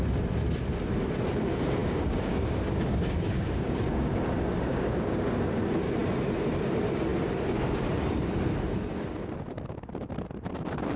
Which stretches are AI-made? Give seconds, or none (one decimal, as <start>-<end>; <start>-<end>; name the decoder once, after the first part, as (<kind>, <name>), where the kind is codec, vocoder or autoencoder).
1.8-4.2 (codec, DAC); 4.7-5.3